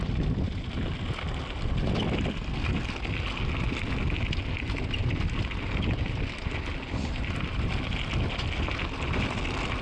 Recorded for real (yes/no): yes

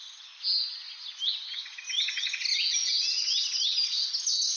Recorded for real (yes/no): yes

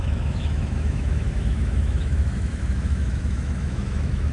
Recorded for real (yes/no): no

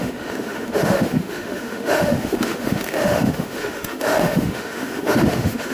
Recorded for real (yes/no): no